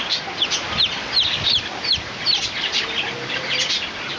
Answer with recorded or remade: recorded